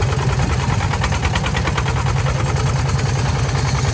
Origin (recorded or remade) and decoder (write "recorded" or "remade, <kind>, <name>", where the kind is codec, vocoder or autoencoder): recorded